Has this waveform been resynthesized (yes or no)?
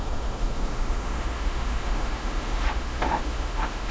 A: yes